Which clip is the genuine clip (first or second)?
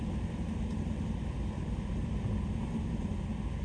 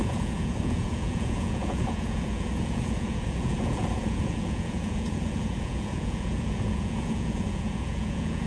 first